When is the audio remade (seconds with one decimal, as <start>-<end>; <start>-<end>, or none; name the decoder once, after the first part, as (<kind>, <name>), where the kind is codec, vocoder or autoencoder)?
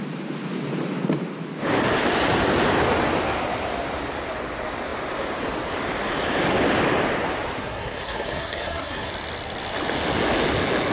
7.6-9.1 (codec, SNAC)